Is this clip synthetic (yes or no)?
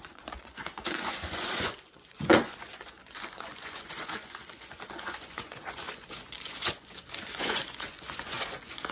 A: yes